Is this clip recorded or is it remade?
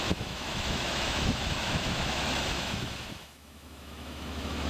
remade